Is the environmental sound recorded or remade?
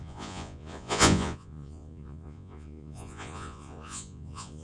remade